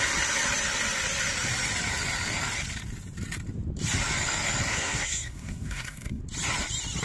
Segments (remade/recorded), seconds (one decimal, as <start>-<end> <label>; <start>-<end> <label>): 0.0-4.7 recorded; 4.7-6.2 remade; 6.2-7.0 recorded